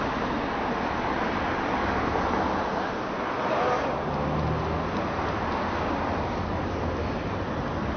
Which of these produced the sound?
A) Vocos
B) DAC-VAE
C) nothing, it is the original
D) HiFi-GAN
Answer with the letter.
C